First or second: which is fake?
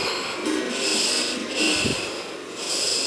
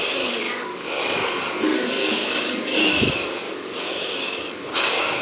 second